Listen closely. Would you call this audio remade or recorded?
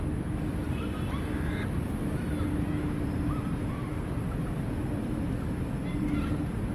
recorded